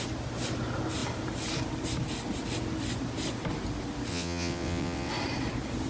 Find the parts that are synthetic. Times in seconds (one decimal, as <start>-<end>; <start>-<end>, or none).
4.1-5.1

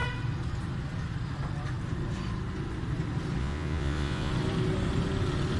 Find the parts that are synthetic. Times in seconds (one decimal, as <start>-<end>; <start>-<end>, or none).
3.4-4.3

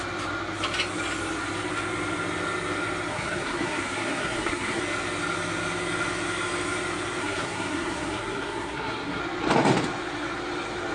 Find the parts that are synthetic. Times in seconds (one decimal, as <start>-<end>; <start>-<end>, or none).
3.1-4.8; 7.2-9.2

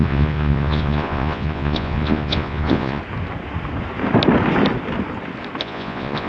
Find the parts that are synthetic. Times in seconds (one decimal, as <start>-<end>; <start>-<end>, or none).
0.0-3.0; 5.6-6.3

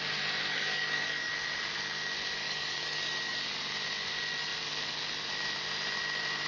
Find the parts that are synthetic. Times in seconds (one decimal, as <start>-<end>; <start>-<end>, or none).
0.5-1.3; 2.4-3.4